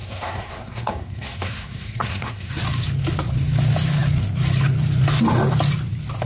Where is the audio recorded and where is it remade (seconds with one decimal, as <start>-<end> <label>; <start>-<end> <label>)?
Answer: 0.0-2.5 remade; 2.5-6.3 recorded

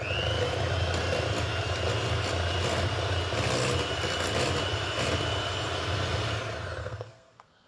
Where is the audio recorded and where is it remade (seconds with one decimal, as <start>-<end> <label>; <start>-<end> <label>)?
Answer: 0.0-6.8 recorded; 6.8-7.7 remade

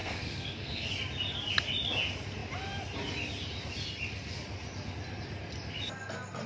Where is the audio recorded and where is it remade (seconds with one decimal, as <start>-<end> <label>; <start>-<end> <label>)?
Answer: 0.0-0.9 remade; 0.9-6.5 recorded

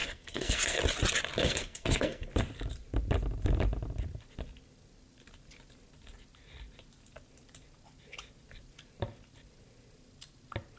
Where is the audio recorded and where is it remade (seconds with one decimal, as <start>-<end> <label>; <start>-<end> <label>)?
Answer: 0.0-0.8 remade; 0.8-1.4 recorded; 1.4-2.3 remade; 2.3-10.8 recorded